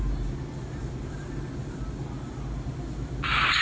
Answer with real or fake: real